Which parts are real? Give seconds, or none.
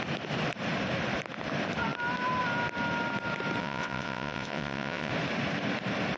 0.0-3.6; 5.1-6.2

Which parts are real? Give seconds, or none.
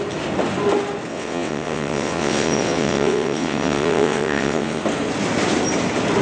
0.0-1.1; 4.8-6.2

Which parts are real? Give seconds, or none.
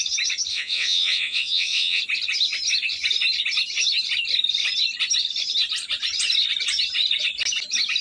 0.0-0.5; 2.0-8.0